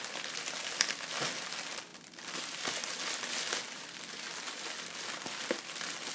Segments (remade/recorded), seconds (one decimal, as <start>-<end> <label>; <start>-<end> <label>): 0.0-6.1 recorded